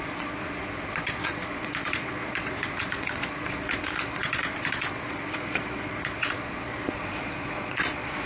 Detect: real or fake fake